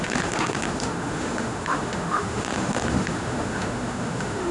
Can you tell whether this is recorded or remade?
remade